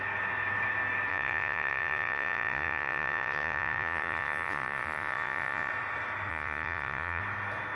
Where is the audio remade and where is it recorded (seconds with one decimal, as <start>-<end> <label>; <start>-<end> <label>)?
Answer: 0.0-1.1 recorded; 1.1-5.7 remade; 5.7-6.3 recorded; 6.3-7.2 remade; 7.2-7.8 recorded